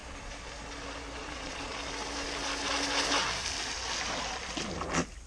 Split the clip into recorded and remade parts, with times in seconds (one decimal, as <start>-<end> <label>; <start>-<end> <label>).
0.0-1.2 recorded; 1.2-1.7 remade; 1.7-5.3 recorded